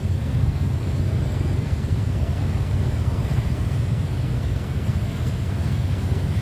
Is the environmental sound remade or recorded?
remade